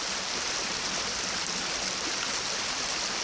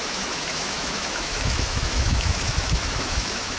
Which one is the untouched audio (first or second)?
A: first